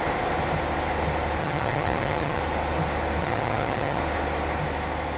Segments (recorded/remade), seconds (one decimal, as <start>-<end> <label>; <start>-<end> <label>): 0.0-1.4 recorded; 1.4-2.4 remade; 2.4-3.2 recorded; 3.2-4.0 remade; 4.0-5.2 recorded